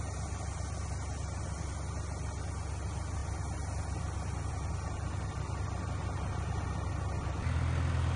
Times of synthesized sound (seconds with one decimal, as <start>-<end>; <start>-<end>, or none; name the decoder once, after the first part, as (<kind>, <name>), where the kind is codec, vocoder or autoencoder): none